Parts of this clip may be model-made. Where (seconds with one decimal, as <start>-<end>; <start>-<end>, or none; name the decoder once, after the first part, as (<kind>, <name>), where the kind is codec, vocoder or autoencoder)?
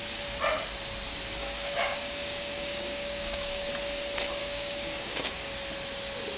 1.4-3.7 (codec, DAC); 4.4-5.5